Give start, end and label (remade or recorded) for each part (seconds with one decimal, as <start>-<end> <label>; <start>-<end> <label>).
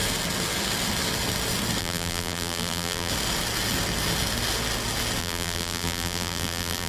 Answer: 0.0-1.8 recorded; 1.8-3.1 remade; 3.1-5.2 recorded; 5.2-6.9 remade